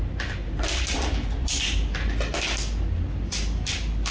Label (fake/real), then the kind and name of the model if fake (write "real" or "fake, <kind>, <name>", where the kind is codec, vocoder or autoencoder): real